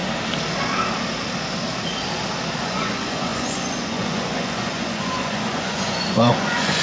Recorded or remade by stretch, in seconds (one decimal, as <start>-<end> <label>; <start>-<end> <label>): 0.0-2.6 recorded; 2.6-6.8 remade